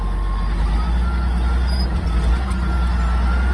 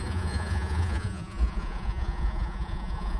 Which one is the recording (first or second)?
first